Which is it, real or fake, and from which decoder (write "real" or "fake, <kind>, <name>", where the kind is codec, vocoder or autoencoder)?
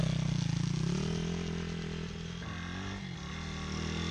real